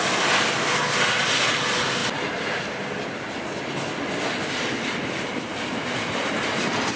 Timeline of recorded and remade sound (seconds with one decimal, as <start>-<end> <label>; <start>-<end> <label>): 0.0-7.0 recorded